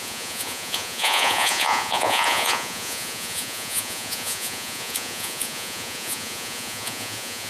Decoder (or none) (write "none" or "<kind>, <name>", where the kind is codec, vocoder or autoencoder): vocoder, Vocos